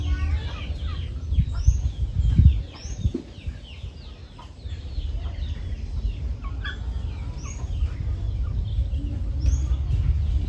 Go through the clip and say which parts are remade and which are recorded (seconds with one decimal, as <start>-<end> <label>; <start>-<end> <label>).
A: 0.0-4.2 recorded; 4.2-6.5 remade; 6.5-10.5 recorded